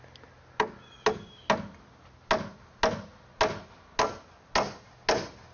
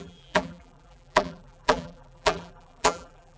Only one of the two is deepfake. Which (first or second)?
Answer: second